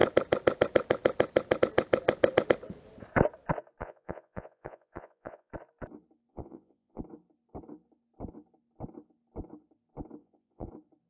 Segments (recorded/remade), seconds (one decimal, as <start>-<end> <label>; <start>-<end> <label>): 0.0-3.8 recorded; 3.8-5.5 remade; 5.5-6.3 recorded; 6.3-7.0 remade; 7.0-10.2 recorded; 10.2-10.7 remade; 10.7-11.1 recorded